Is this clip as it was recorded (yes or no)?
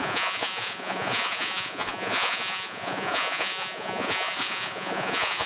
no